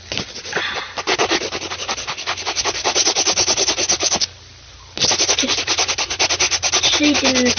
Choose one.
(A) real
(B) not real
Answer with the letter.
A